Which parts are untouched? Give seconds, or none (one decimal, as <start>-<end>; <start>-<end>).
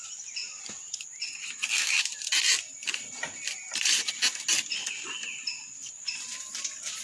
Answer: 0.0-7.0